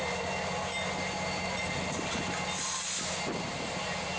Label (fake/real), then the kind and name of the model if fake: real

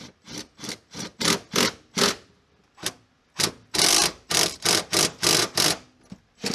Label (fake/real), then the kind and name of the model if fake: real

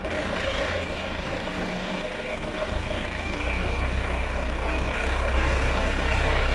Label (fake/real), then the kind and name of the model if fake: fake, codec, DAC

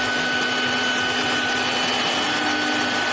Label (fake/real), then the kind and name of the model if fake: real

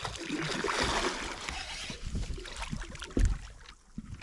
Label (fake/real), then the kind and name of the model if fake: real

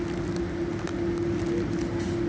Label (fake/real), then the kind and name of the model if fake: real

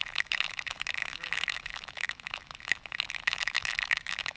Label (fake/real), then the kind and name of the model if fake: fake, autoencoder, DAC-VAE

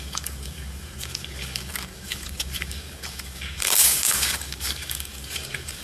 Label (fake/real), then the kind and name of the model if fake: fake, codec, DAC